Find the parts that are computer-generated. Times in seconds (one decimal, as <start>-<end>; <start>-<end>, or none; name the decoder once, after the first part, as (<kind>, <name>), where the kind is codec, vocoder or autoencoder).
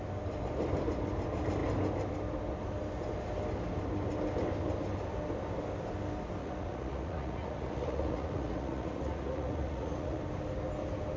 6.4-10.2 (vocoder, Vocos)